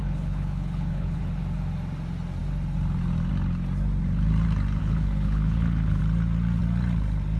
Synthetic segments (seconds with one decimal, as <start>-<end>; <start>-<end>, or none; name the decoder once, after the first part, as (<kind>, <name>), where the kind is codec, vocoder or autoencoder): 0.0-1.2 (codec, HILCodec); 4.8-6.0